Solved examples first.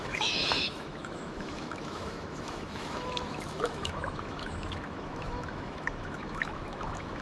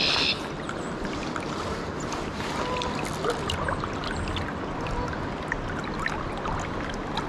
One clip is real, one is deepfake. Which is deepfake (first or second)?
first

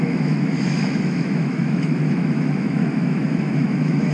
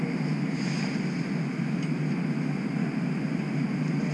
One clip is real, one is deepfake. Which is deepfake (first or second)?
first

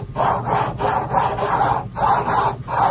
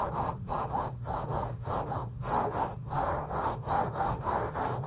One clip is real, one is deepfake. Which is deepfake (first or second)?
second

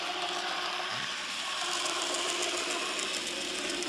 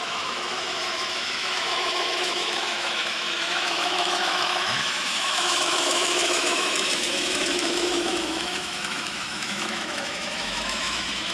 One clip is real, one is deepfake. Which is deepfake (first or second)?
second